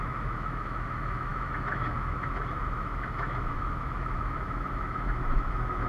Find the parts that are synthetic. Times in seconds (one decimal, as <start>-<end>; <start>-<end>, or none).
0.0-5.9